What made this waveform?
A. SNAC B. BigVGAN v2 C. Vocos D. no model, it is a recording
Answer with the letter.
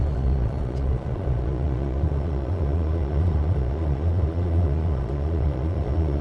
C